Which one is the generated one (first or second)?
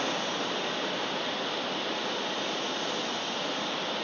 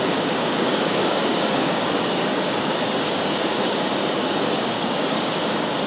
second